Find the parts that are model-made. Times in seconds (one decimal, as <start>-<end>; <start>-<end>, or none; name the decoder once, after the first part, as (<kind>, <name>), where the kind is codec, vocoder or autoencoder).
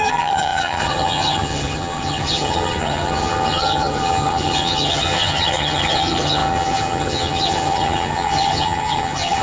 0.0-9.4 (vocoder, HiFi-GAN)